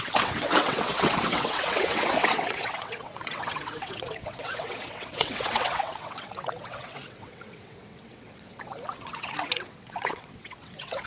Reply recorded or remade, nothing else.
remade